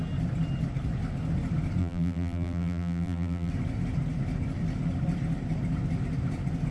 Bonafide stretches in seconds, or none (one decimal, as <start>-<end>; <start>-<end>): 0.0-1.8; 3.5-6.7